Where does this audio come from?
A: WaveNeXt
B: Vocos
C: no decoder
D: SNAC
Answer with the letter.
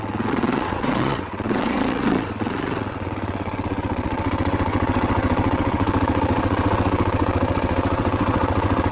A